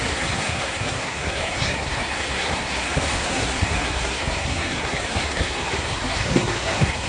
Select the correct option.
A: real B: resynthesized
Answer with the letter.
B